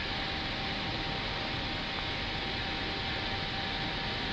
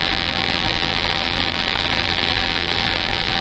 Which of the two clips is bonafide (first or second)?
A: first